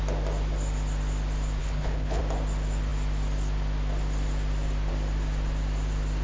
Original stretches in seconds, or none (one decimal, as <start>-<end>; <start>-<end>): 0.0-1.6; 2.2-6.2